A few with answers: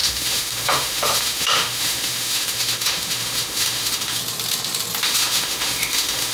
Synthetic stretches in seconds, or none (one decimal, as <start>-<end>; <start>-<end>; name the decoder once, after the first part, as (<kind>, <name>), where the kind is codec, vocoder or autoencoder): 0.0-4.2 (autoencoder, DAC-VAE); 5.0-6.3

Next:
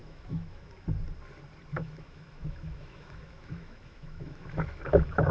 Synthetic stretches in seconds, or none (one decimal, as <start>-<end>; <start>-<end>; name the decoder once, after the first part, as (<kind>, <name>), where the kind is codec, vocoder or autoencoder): 0.0-0.7 (autoencoder, DAC-VAE); 1.7-5.3

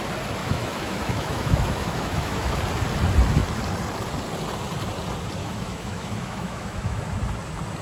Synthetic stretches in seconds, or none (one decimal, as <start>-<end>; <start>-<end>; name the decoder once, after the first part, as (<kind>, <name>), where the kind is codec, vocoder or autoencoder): 0.4-2.6 (autoencoder, DAC-VAE); 5.4-7.0

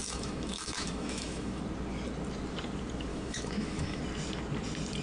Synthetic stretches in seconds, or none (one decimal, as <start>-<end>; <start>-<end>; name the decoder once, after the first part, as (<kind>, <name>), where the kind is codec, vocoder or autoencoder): 0.0-1.6 (autoencoder, DAC-VAE); 3.1-4.0

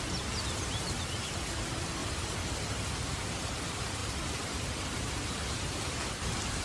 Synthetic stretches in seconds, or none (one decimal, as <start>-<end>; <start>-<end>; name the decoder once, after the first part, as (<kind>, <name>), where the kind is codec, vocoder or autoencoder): none

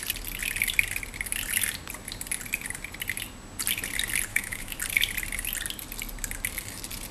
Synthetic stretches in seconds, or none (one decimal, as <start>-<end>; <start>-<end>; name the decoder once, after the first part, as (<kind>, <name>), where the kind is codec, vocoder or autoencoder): 4.3-4.8 (autoencoder, DAC-VAE)

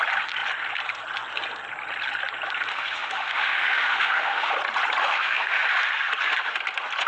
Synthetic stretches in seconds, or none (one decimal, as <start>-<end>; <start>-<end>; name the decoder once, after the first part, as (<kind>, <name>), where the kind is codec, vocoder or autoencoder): 2.7-4.5 (autoencoder, DAC-VAE); 5.0-5.6

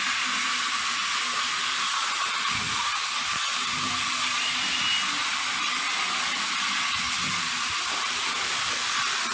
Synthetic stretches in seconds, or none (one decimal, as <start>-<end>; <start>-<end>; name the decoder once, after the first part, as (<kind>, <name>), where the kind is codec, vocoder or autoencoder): none